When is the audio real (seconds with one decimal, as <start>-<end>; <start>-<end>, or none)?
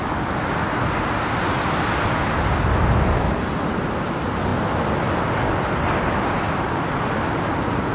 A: 0.0-7.9